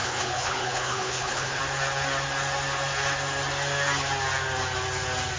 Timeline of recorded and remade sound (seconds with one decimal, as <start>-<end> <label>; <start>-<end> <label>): 0.0-1.6 remade; 1.6-5.4 recorded